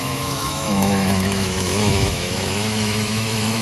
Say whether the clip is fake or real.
fake